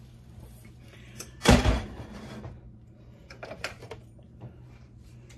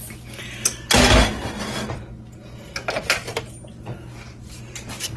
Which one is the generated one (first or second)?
first